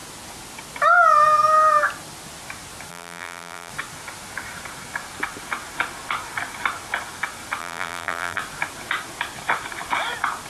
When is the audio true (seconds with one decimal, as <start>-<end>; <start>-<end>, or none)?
0.0-2.9; 3.7-7.6; 8.4-10.5